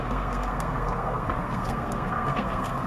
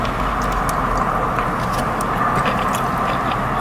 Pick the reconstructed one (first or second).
first